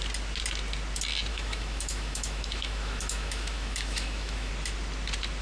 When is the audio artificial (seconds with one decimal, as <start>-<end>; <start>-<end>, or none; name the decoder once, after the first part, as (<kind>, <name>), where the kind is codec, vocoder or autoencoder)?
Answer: 1.3-4.5 (autoencoder, DAC-VAE)